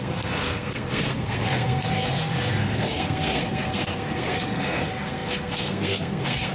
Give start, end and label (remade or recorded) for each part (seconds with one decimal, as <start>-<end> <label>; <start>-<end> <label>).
0.0-6.5 remade